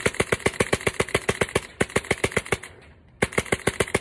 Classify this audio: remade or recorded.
recorded